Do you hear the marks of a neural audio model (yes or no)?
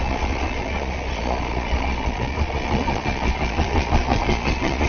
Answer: yes